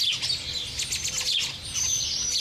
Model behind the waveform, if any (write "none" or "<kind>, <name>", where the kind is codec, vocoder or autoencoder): none